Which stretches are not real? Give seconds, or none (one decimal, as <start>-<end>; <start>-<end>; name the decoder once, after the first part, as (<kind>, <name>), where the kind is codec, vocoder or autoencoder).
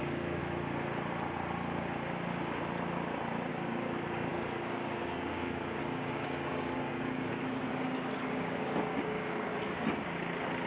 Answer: 0.0-0.4 (codec, DAC); 3.5-9.5